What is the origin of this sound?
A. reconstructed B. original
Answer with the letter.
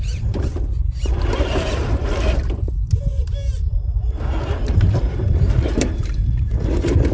A